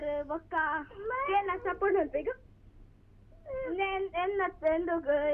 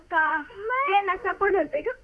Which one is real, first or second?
first